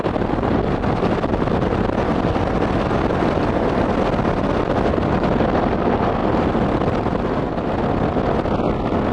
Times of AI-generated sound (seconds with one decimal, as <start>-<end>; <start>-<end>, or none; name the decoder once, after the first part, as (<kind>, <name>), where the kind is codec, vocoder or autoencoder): none